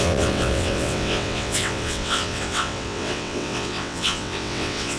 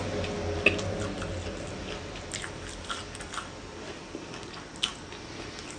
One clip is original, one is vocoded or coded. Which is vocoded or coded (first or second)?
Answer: first